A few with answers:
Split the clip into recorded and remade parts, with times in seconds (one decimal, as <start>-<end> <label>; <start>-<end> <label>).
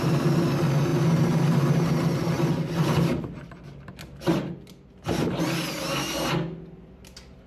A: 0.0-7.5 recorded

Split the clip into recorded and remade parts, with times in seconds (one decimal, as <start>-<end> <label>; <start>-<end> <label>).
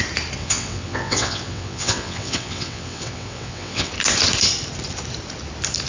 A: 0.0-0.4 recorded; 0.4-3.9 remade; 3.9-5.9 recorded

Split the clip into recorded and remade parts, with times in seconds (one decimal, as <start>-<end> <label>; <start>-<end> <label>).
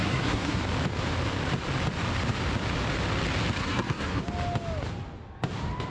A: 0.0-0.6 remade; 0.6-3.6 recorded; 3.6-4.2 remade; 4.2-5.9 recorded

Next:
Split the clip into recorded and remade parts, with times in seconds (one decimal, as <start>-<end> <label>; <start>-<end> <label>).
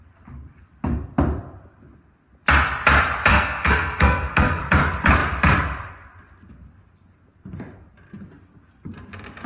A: 0.0-3.3 recorded; 3.3-4.6 remade; 4.6-9.5 recorded